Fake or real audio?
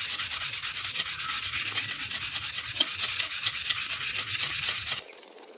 fake